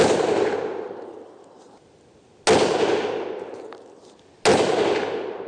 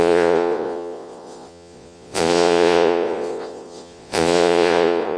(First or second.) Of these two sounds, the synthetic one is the second